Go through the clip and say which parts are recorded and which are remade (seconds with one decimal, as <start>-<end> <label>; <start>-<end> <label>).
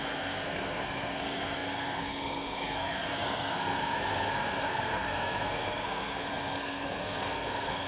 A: 0.0-7.9 remade